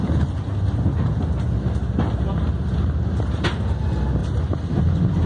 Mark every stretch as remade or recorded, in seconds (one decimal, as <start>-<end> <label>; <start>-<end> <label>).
0.0-5.3 recorded